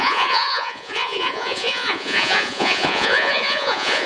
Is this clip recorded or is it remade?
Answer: remade